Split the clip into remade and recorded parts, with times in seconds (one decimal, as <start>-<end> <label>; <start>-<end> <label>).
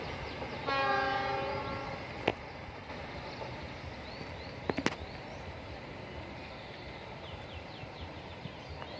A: 0.0-9.0 recorded